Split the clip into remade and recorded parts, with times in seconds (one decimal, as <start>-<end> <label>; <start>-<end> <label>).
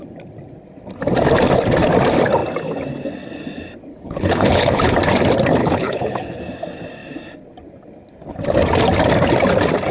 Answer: 0.0-3.9 recorded; 3.9-4.9 remade; 4.9-5.6 recorded; 5.6-6.4 remade; 6.4-9.9 recorded